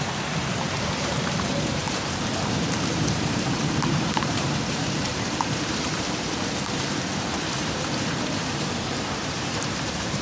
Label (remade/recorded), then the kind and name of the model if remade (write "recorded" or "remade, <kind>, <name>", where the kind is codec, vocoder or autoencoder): remade, vocoder, BigVGAN v2